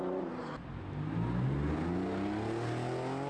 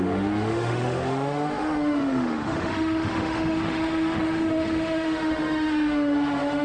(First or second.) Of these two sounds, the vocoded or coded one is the second